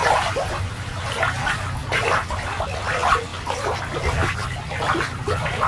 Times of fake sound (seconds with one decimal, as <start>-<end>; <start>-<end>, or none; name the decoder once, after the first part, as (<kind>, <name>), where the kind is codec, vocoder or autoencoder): 0.0-1.2 (vocoder, BigVGAN v2); 1.8-2.3; 3.3-3.8